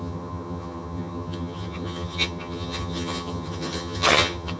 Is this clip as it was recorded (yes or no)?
no